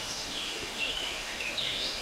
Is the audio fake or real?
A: fake